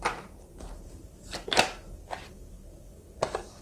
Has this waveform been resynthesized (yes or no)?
yes